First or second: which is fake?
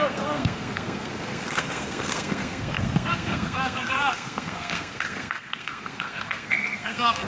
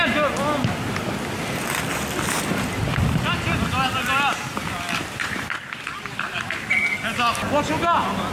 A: first